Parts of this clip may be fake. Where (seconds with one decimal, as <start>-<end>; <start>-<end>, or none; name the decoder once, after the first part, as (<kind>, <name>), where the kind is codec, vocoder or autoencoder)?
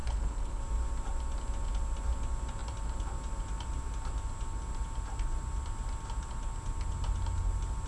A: 0.0-0.6 (codec, HILCodec)